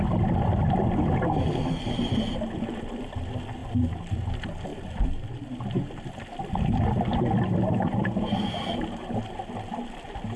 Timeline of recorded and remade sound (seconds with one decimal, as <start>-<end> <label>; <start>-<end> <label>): 0.0-10.4 recorded